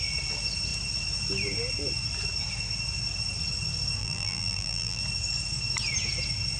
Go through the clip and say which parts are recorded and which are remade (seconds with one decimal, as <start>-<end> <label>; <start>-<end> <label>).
0.0-4.0 recorded; 4.0-5.0 remade; 5.0-6.6 recorded